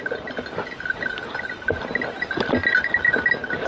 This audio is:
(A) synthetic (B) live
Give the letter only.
B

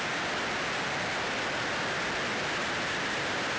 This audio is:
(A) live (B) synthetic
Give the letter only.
A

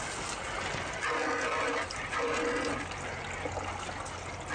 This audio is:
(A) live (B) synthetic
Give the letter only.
A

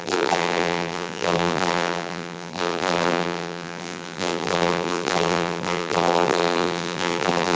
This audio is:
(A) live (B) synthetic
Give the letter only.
B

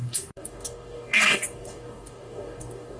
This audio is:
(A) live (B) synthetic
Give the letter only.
B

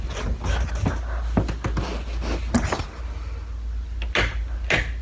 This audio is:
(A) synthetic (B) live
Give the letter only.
B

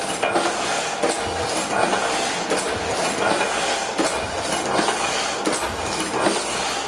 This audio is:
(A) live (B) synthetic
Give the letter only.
A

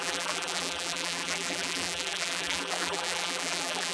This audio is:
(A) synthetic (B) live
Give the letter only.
A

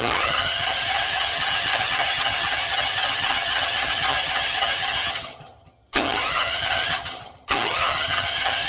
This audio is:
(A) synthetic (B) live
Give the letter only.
A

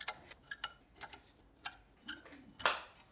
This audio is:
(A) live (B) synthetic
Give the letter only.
A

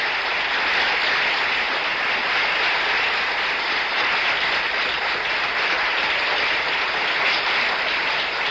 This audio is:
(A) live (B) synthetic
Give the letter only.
A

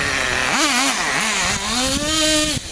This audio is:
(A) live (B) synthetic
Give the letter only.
A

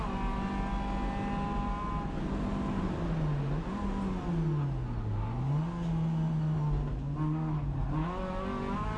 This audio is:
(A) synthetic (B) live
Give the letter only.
B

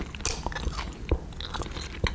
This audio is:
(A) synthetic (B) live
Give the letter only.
B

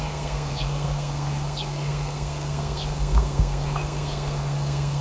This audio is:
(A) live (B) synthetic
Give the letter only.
B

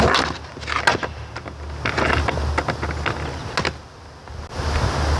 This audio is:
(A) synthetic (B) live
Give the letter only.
B